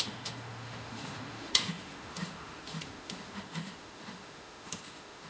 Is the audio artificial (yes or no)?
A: yes